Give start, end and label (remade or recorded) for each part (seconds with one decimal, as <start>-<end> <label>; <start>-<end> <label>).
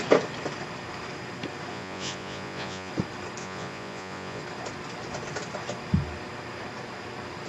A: 0.0-1.7 recorded; 1.7-2.9 remade; 2.9-3.4 recorded; 3.4-4.4 remade; 4.4-7.5 recorded